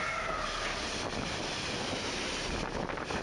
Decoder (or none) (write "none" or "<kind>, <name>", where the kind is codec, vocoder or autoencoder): none